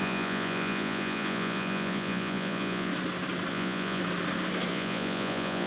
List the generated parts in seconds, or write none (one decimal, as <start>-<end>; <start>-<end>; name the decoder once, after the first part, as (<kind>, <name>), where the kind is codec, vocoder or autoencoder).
0.0-2.9 (vocoder, Vocos); 3.5-4.0; 4.7-5.7